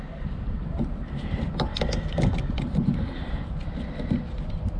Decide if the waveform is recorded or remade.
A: recorded